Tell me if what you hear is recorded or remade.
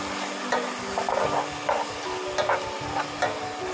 recorded